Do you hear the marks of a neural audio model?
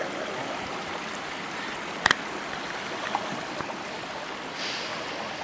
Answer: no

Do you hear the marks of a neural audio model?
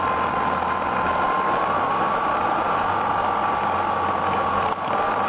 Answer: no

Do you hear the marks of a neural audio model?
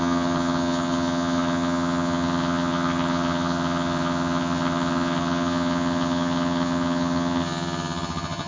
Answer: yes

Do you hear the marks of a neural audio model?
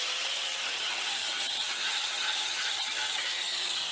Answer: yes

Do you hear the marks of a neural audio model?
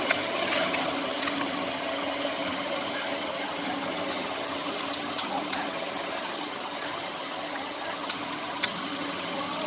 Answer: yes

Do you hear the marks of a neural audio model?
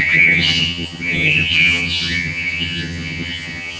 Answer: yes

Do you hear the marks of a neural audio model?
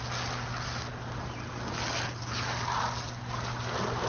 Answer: no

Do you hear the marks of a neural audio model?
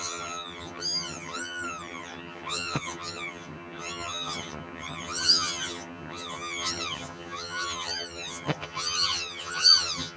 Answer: yes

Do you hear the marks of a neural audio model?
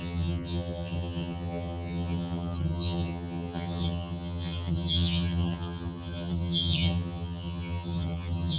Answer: yes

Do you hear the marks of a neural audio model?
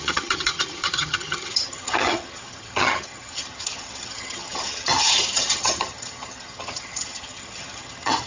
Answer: yes